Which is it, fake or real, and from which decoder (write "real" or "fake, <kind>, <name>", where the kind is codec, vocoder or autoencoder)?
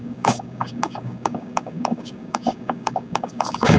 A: fake, codec, DAC